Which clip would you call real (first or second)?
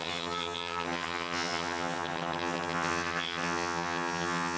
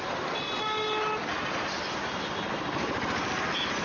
second